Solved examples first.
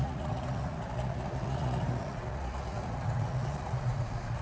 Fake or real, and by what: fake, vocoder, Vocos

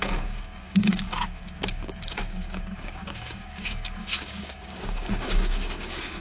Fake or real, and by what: fake, codec, DAC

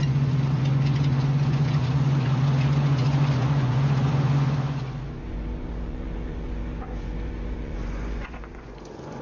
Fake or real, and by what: fake, vocoder, Vocos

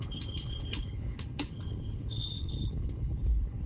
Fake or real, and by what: fake, codec, HILCodec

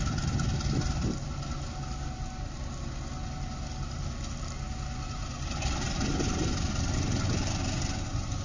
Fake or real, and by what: real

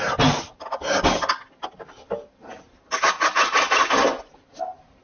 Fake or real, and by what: real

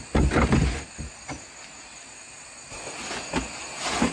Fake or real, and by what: real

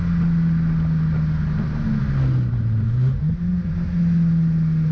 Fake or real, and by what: real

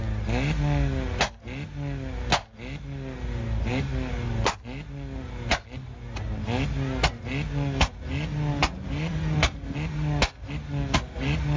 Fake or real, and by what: real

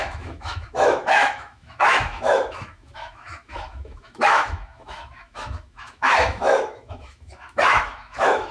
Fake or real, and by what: fake, autoencoder, DAC-VAE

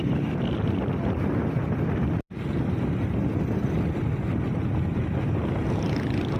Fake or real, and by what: real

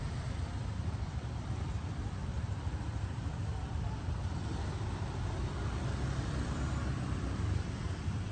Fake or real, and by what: fake, vocoder, BigVGAN v2